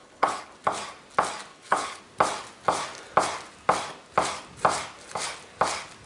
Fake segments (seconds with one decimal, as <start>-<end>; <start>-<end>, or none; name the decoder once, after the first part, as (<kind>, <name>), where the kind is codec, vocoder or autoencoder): 0.0-0.5 (codec, HILCodec); 1.5-2.0